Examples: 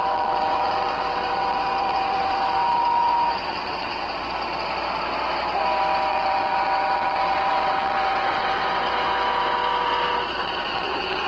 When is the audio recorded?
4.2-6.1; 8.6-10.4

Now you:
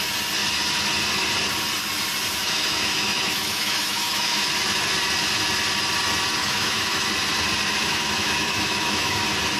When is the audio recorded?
0.0-2.4; 4.5-6.4; 7.1-7.8; 9.2-9.6

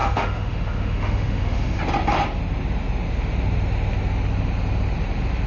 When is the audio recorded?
1.8-5.5

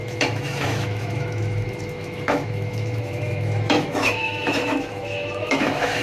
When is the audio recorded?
none